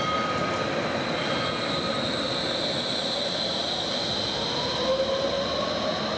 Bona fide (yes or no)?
yes